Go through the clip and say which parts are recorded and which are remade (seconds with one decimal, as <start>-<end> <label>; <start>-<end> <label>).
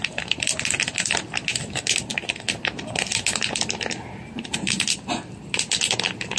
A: 0.0-6.4 recorded